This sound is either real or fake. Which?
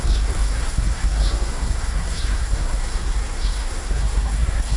fake